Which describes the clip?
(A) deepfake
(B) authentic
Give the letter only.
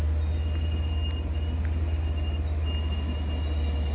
B